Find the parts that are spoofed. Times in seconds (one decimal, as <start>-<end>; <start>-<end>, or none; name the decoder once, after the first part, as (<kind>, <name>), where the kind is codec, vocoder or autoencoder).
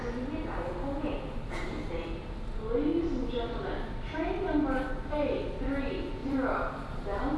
6.2-7.4 (vocoder, BigVGAN v2)